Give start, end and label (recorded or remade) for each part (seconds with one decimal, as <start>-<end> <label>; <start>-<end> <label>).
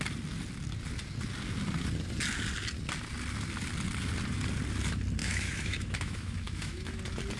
0.0-5.2 recorded; 5.2-7.0 remade; 7.0-7.4 recorded